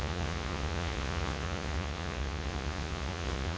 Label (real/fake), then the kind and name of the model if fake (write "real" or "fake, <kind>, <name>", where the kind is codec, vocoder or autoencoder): fake, vocoder, Vocos